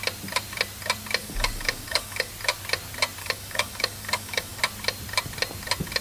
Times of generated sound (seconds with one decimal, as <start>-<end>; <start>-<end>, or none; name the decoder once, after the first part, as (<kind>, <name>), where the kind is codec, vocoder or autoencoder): 1.2-2.3 (codec, DAC); 3.2-4.6

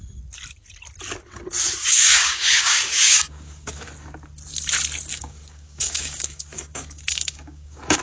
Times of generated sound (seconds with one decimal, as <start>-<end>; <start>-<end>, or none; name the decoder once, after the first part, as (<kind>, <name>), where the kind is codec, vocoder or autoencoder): 1.8-3.8 (codec, DAC); 5.1-8.0

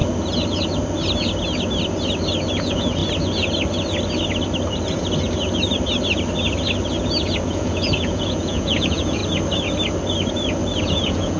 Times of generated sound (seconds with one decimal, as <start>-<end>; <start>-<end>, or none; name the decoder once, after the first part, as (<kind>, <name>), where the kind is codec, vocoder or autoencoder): 2.6-3.0 (vocoder, Vocos); 7.4-9.2; 10.8-11.4

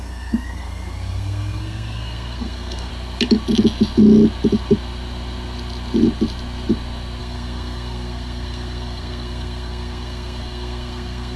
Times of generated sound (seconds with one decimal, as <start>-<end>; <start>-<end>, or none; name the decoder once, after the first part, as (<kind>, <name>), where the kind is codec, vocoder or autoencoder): 0.0-2.9 (codec, SNAC); 7.2-11.4

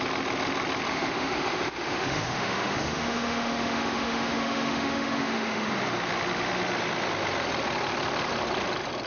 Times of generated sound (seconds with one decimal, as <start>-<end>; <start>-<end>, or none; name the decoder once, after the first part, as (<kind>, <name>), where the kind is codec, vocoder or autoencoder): 0.9-5.7 (autoencoder, DAC-VAE)

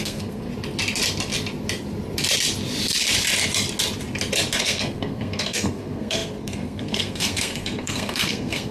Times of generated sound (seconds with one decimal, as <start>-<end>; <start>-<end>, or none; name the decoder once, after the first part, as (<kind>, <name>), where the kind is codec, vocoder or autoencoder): 0.0-0.5 (codec, SNAC); 4.6-8.7